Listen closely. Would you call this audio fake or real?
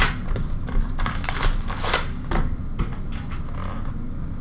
real